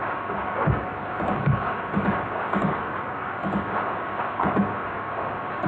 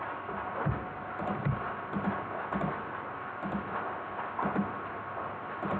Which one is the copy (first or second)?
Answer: first